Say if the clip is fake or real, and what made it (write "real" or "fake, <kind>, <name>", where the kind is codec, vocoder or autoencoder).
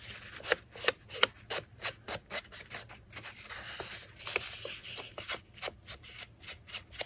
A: real